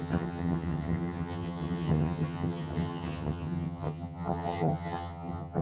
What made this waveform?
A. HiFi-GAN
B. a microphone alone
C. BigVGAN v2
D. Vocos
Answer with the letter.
A